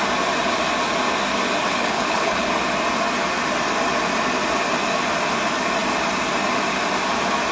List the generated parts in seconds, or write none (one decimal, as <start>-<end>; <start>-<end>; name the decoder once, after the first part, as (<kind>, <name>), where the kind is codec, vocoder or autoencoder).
1.7-2.5 (codec, HILCodec)